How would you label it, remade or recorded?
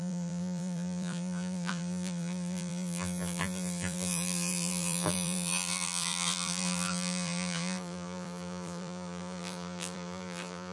remade